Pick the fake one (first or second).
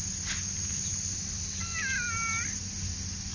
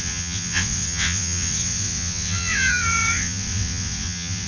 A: second